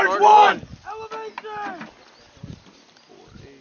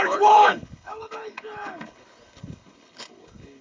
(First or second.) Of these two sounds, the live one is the first